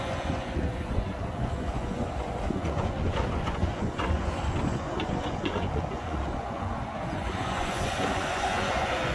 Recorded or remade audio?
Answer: remade